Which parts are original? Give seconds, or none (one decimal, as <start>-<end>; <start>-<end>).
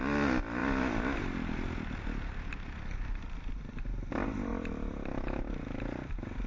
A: 0.0-0.6; 3.6-4.5; 5.5-6.5